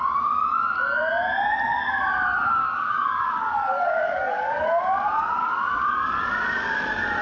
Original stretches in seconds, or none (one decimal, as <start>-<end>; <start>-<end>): 0.0-2.6; 4.8-5.4; 6.2-7.2